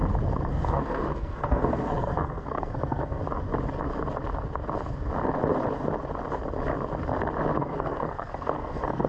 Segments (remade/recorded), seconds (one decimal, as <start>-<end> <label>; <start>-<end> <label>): 0.0-0.5 recorded; 0.5-3.2 remade; 3.2-7.6 recorded; 7.6-9.1 remade